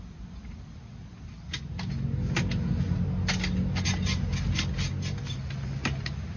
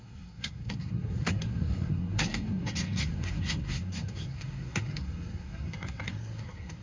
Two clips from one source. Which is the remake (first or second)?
second